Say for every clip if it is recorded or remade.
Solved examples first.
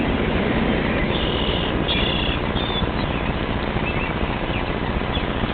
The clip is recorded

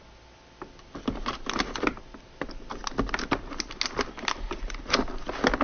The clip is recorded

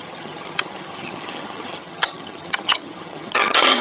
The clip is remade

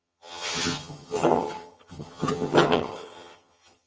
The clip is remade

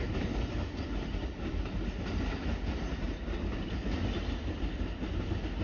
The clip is recorded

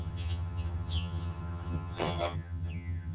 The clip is remade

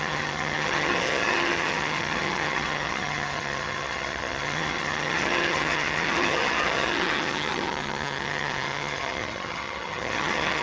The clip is remade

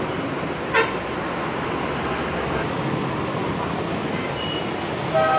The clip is recorded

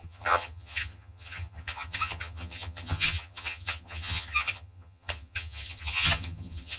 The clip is remade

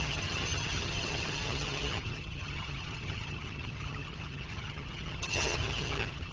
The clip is remade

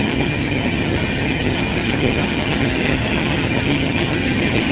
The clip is remade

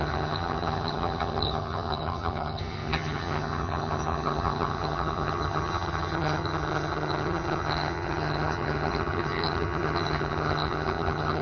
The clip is remade